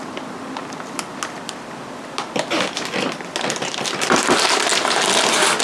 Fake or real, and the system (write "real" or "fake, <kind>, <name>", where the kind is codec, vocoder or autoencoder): real